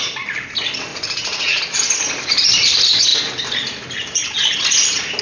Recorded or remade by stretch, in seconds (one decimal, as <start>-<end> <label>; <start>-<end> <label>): 0.0-0.9 recorded; 0.9-1.6 remade; 1.6-5.2 recorded